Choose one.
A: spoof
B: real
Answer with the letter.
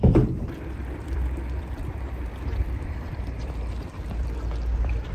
A